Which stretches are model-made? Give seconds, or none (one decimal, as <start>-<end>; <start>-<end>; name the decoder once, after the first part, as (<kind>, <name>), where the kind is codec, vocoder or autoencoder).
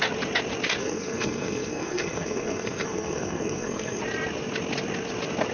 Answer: 0.8-4.0 (codec, SNAC)